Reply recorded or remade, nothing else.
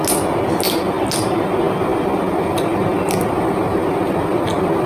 recorded